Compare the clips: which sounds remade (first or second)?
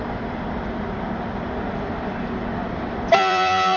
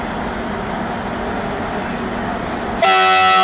first